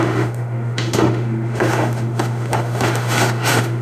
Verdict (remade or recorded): remade